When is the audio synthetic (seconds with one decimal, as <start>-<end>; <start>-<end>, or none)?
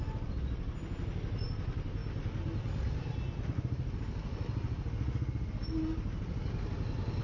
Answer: none